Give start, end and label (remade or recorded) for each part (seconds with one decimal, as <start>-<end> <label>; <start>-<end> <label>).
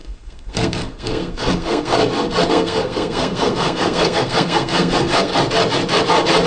0.0-2.0 remade; 2.0-2.5 recorded; 2.5-5.3 remade; 5.3-6.5 recorded